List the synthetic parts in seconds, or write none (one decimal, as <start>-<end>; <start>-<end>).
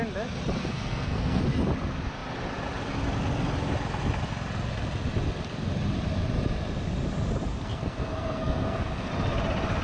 0.6-1.4; 7.5-9.1